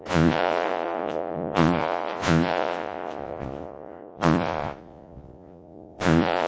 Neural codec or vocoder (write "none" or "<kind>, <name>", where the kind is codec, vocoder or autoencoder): vocoder, Vocos